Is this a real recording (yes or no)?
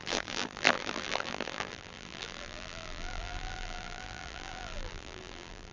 no